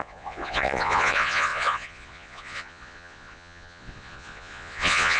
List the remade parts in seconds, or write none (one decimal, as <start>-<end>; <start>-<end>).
0.0-5.2